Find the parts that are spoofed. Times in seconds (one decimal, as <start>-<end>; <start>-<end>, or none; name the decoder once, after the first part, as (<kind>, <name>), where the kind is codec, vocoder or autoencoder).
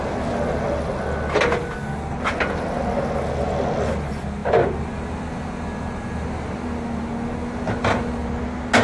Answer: none